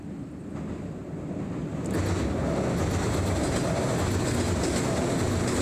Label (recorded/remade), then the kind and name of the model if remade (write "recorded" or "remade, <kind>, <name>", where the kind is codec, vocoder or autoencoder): recorded